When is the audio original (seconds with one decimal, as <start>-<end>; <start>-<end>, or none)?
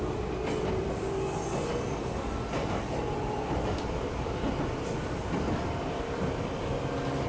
none